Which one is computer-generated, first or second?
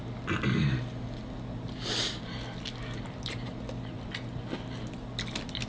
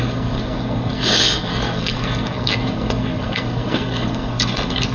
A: second